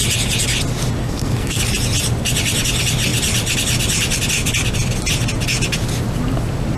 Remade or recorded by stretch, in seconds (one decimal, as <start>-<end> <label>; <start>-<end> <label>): 0.0-1.0 recorded; 1.0-1.6 remade; 1.6-6.8 recorded